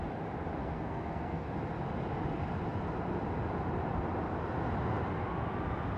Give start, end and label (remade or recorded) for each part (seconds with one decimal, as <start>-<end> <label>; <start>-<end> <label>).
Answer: 0.0-0.6 recorded; 0.6-1.5 remade; 1.5-6.0 recorded